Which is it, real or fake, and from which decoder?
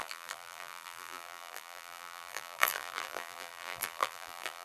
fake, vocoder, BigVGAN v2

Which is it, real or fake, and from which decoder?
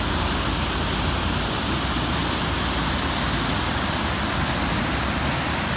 real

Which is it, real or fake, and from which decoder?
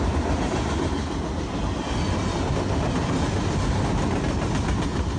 real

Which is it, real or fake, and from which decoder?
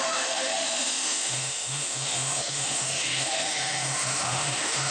fake, autoencoder, DAC-VAE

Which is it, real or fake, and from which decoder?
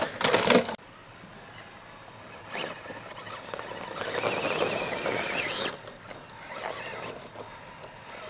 real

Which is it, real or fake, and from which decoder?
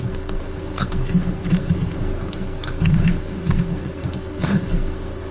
fake, codec, SNAC